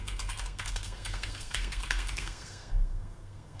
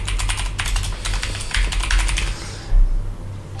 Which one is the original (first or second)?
second